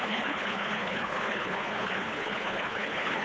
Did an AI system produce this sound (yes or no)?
yes